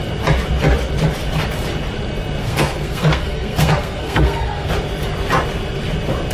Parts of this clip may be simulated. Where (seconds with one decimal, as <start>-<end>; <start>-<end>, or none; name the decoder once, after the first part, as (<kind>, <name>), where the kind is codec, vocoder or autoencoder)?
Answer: 2.4-4.7 (codec, SNAC)